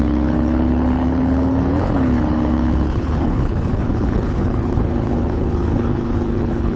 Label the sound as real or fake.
fake